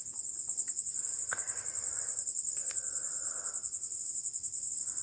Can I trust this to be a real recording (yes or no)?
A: yes